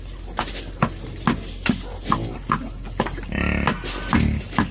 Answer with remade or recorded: recorded